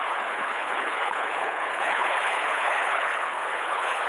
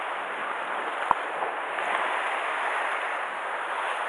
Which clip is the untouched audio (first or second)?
second